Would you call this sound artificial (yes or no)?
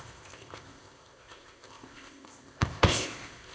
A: yes